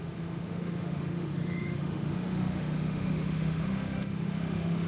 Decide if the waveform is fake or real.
fake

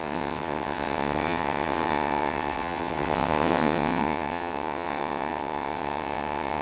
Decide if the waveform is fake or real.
fake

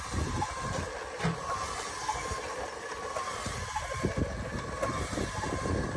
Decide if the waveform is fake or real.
real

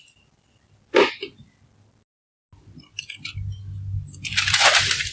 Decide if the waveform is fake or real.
real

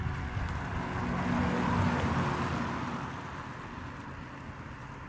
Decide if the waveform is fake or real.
real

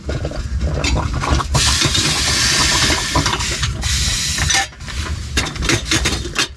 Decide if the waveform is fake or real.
real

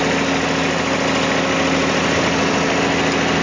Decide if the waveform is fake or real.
real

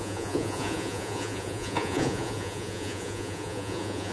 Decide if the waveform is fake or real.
fake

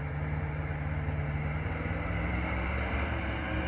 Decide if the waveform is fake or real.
fake